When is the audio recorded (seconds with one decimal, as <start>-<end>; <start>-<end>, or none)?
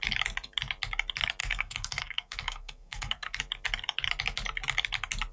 0.0-1.4; 3.4-5.3